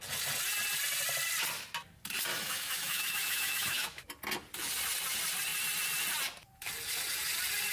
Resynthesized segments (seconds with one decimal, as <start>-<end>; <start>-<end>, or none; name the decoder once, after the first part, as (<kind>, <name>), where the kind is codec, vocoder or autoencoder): 2.3-4.1 (autoencoder, DAC-VAE)